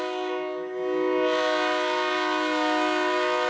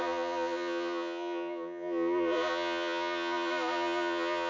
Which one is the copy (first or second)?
second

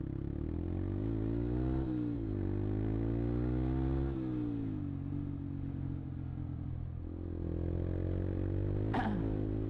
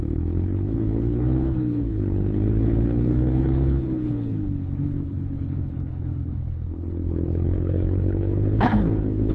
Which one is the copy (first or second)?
second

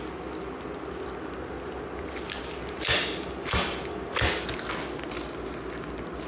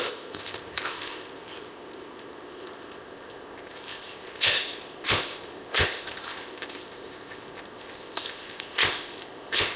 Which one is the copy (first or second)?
second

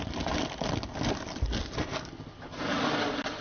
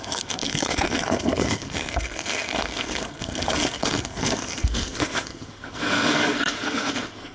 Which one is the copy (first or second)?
second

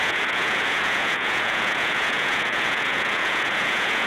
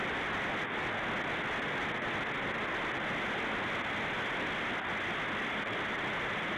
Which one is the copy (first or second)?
first